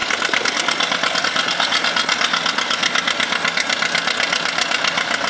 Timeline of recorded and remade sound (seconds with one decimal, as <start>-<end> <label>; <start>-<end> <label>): 0.0-1.2 remade; 1.2-5.3 recorded

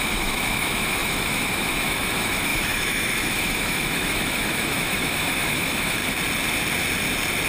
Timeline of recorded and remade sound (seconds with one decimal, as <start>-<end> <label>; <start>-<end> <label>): 0.0-6.0 remade; 6.0-7.5 recorded

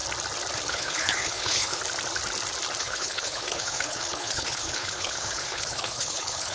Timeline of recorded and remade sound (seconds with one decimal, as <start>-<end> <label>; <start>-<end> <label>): 0.0-0.7 recorded; 0.7-1.8 remade; 1.8-2.8 recorded; 2.8-6.5 remade

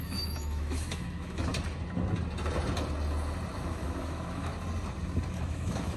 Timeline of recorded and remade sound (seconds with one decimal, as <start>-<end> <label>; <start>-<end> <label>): 0.0-1.5 remade; 1.5-3.6 recorded; 3.6-4.5 remade; 4.5-5.3 recorded; 5.3-6.0 remade

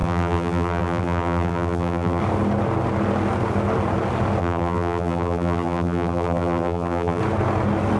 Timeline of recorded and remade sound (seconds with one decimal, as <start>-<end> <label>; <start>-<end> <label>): 0.0-2.2 remade; 2.2-4.4 recorded; 4.4-7.2 remade; 7.2-8.0 recorded

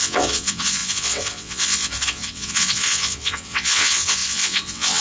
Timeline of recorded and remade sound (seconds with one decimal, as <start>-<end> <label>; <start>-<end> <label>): 0.0-5.0 remade